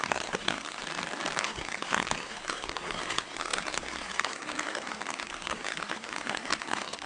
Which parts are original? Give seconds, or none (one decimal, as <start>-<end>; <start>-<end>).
0.8-1.4